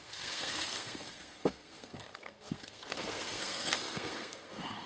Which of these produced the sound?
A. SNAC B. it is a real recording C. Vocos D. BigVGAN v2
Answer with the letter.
A